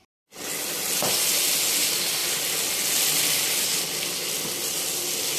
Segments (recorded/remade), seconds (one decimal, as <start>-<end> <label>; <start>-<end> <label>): 0.0-5.4 recorded